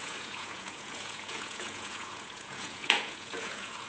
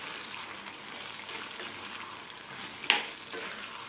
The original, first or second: second